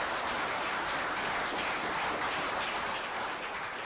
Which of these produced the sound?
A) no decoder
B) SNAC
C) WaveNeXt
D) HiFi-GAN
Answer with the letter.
A